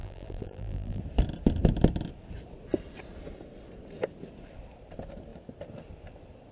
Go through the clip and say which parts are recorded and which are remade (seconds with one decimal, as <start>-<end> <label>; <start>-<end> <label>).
0.0-1.0 remade; 1.0-6.5 recorded